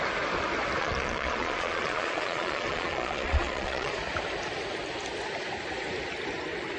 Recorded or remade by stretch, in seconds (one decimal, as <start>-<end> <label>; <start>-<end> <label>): 0.0-0.8 recorded; 0.8-3.9 remade; 3.9-6.8 recorded